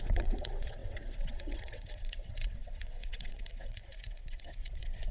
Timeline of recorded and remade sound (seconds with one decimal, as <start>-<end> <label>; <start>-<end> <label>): 0.0-5.1 remade